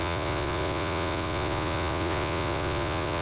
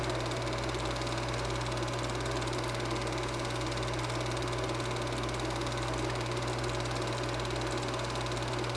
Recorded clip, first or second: second